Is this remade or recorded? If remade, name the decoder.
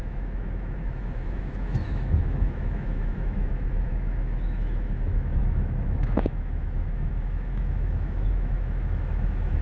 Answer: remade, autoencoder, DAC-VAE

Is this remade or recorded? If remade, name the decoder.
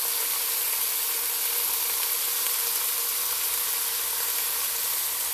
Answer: recorded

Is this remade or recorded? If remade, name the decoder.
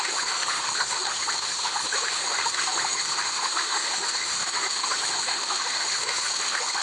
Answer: remade, autoencoder, DAC-VAE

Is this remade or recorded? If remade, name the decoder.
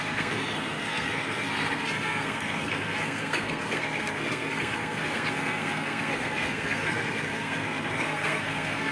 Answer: remade, codec, SNAC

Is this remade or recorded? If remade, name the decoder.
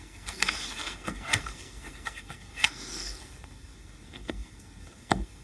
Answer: remade, codec, SNAC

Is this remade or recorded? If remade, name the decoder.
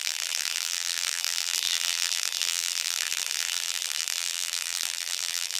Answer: remade, vocoder, BigVGAN v2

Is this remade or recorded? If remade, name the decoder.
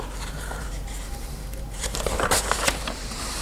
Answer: remade, vocoder, BigVGAN v2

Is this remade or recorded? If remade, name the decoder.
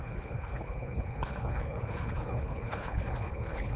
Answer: remade, codec, HILCodec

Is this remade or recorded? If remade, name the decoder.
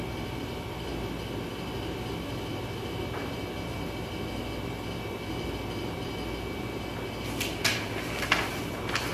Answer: recorded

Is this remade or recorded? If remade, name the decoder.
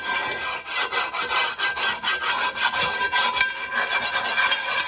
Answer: recorded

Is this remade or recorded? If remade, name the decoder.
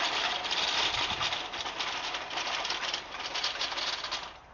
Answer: recorded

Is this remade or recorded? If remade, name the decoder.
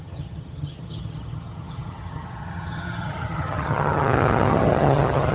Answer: remade, vocoder, HiFi-GAN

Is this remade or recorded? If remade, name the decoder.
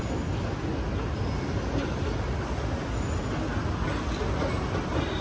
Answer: recorded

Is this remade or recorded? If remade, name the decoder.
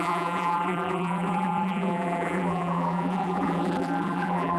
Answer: remade, vocoder, BigVGAN v2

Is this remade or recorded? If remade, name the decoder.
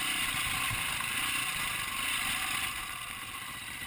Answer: remade, vocoder, BigVGAN v2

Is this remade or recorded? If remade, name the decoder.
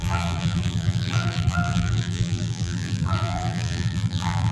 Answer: remade, vocoder, BigVGAN v2